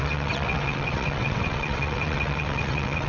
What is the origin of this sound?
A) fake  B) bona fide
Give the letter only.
A